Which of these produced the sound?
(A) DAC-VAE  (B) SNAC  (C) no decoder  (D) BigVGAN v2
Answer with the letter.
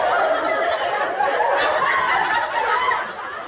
C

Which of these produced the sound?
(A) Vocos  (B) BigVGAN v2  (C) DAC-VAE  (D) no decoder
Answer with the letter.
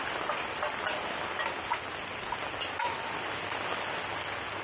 D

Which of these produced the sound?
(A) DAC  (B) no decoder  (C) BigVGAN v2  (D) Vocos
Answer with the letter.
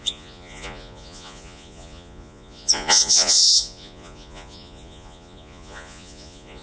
D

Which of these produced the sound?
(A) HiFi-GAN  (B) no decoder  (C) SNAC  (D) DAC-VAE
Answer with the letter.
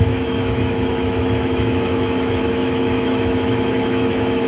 D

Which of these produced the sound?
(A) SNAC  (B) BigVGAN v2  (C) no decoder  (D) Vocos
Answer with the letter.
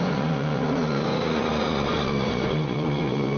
D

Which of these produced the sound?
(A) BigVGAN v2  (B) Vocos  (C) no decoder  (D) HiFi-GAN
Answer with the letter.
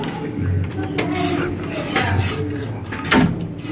C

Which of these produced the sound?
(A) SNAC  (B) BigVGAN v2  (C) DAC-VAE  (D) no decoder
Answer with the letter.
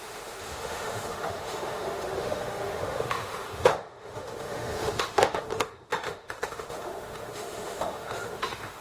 C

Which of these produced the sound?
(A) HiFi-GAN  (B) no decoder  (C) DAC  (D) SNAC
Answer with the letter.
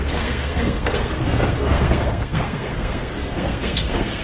D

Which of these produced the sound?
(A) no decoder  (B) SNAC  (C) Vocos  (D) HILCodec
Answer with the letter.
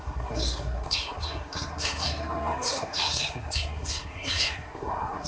B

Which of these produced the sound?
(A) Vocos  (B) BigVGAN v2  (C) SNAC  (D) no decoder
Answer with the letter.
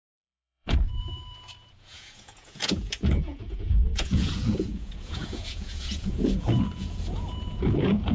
A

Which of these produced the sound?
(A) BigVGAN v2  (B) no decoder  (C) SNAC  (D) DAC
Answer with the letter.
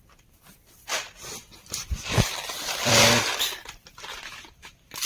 A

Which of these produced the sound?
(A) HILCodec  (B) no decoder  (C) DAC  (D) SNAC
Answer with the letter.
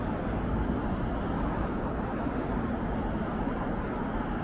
B